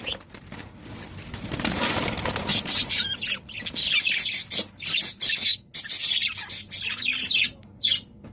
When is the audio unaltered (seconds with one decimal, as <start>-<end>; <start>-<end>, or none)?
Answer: 0.0-8.3